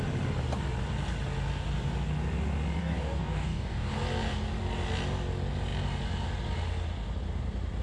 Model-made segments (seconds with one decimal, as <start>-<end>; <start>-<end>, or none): 2.8-3.9